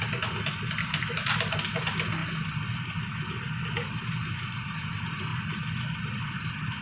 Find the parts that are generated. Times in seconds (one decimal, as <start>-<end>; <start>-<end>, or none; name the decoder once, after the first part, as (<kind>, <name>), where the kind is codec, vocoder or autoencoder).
none